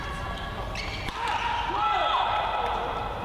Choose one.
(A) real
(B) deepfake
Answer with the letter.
A